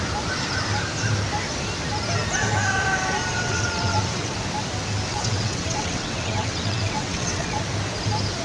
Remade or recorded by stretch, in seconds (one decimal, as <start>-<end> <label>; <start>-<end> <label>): 0.0-3.3 recorded; 3.3-4.3 remade; 4.3-5.1 recorded; 5.1-7.6 remade; 7.6-8.4 recorded